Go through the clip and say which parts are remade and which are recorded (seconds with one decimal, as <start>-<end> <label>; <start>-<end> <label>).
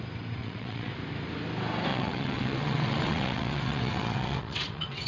0.0-0.4 recorded; 0.4-0.9 remade; 0.9-1.9 recorded; 1.9-5.1 remade